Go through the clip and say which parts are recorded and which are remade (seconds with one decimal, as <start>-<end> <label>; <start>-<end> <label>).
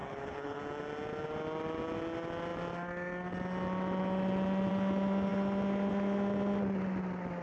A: 0.0-0.6 remade; 0.6-7.4 recorded